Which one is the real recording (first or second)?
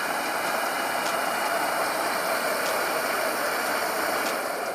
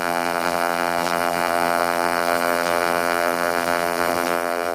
first